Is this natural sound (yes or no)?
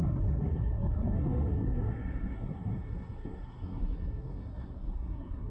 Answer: no